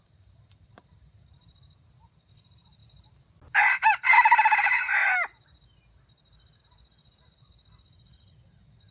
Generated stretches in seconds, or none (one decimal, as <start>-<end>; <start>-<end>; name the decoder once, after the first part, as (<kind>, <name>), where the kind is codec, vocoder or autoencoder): none